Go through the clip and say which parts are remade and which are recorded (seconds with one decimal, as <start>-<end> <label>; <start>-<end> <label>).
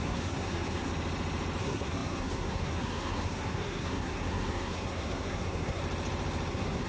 0.0-0.9 remade; 0.9-1.6 recorded; 1.6-5.8 remade; 5.8-6.5 recorded; 6.5-6.9 remade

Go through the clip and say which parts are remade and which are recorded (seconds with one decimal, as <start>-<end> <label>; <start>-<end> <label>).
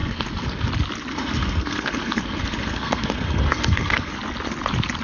0.0-0.7 remade; 0.7-1.1 recorded; 1.1-4.1 remade; 4.1-5.0 recorded